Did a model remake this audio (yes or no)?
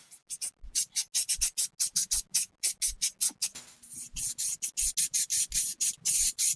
no